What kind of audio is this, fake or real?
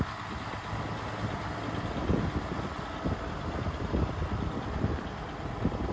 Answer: real